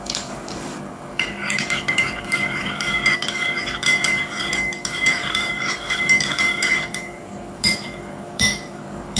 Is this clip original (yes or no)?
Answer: no